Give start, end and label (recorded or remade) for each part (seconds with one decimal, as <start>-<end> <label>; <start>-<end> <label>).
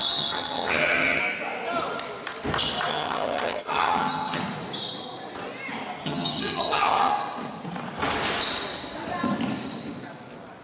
0.0-1.2 remade; 1.2-2.9 recorded; 2.9-4.4 remade; 4.4-6.0 recorded; 6.0-7.1 remade; 7.1-10.6 recorded